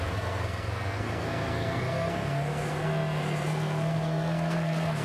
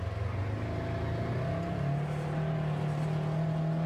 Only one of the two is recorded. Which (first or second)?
second